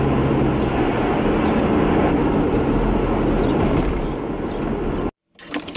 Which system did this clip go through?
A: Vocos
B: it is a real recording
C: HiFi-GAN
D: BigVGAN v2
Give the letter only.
B